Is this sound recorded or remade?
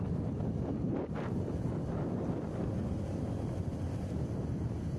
recorded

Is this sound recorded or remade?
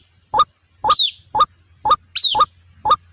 recorded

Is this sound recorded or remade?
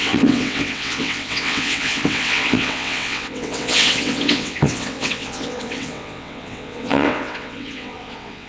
remade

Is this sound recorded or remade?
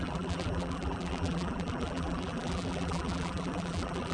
remade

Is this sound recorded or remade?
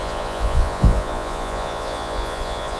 remade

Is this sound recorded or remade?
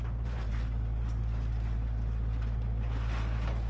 recorded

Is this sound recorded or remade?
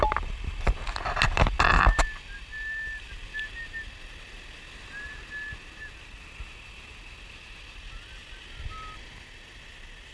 recorded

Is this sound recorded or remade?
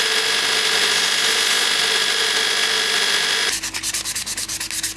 recorded